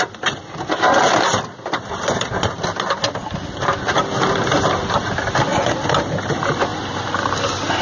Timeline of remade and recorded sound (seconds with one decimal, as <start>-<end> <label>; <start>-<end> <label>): 0.0-5.5 recorded; 5.5-6.3 remade; 6.3-7.8 recorded